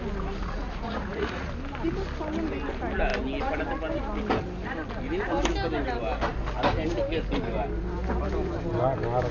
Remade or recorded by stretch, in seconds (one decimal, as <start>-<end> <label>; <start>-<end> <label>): 0.0-0.4 recorded; 0.4-1.5 remade; 1.5-9.3 recorded